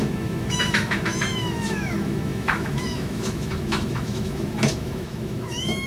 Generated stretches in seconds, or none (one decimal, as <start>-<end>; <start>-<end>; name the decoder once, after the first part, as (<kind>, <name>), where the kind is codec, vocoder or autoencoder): 0.0-5.9 (autoencoder, DAC-VAE)